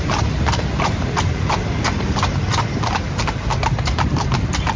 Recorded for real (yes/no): no